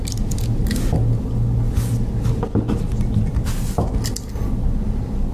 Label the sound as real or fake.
real